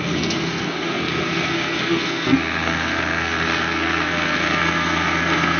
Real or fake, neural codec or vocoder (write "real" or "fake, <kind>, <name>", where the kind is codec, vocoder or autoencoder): fake, codec, SNAC